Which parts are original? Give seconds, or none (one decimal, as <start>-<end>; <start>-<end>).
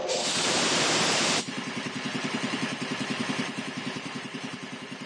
none